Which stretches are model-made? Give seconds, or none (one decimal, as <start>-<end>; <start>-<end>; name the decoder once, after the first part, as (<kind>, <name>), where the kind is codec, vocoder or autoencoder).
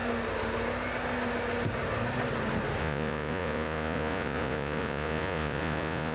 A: 2.8-6.1 (vocoder, Vocos)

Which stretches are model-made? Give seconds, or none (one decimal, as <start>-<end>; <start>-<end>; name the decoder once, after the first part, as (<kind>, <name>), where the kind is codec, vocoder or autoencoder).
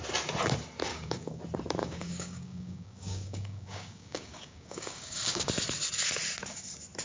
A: 0.9-1.4 (codec, DAC); 1.8-5.5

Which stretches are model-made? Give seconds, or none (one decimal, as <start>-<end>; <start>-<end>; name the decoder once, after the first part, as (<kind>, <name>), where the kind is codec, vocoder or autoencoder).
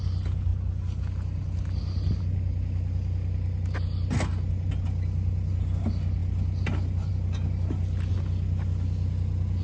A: none